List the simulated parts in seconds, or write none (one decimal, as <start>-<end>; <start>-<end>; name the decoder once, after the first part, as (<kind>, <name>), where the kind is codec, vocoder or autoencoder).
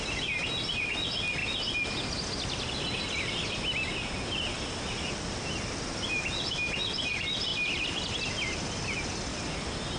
9.3-10.0 (vocoder, BigVGAN v2)